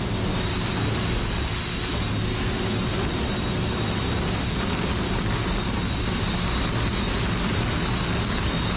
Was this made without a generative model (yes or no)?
yes